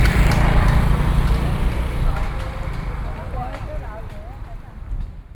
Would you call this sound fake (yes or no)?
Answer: yes